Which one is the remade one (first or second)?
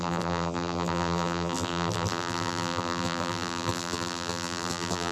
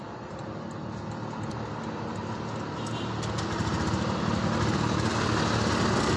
first